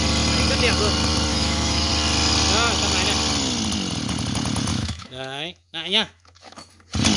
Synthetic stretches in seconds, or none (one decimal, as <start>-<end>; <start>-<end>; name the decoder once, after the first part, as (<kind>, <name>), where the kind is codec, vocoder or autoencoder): 1.3-1.9 (autoencoder, DAC-VAE); 4.7-6.7